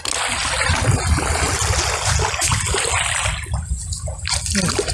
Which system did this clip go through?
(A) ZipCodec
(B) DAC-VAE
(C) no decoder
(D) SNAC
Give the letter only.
C